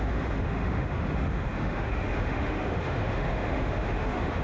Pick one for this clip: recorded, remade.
remade